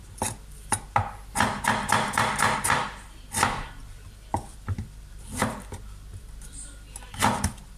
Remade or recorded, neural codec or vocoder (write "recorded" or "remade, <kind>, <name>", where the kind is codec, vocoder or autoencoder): remade, vocoder, BigVGAN v2